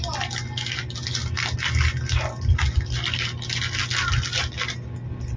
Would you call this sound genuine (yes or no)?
yes